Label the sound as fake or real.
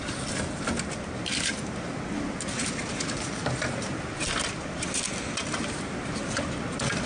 real